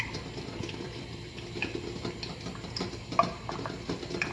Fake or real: fake